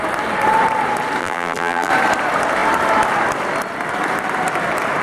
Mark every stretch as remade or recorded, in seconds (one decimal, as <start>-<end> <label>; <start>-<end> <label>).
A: 0.0-1.2 recorded; 1.2-1.9 remade; 1.9-5.0 recorded